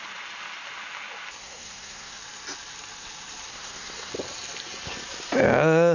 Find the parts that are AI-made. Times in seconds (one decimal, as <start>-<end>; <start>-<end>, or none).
1.4-2.2; 3.5-4.1